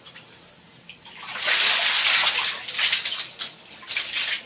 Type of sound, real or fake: real